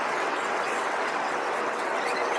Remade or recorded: remade